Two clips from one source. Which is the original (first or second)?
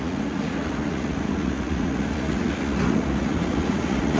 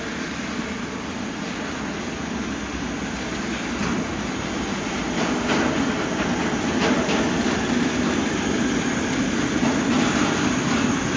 second